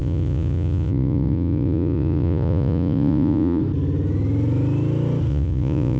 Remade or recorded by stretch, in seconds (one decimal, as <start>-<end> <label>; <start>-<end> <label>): 0.0-3.6 remade; 3.6-5.3 recorded; 5.3-6.0 remade